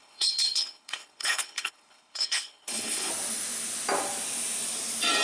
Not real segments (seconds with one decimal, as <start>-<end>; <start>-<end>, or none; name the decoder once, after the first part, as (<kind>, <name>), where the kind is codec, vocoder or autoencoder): 0.0-3.1 (codec, HILCodec)